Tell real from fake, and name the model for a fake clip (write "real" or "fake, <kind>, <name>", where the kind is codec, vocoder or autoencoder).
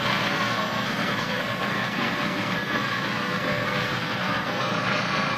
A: fake, codec, SNAC